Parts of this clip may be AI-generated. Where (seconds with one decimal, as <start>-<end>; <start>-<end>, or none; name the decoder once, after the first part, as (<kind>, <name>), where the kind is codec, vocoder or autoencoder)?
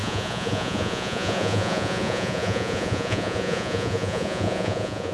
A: 0.0-5.1 (vocoder, Vocos)